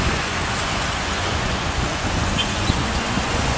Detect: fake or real fake